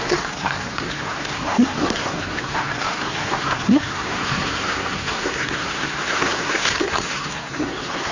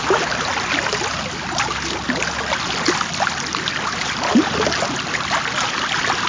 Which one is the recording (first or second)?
second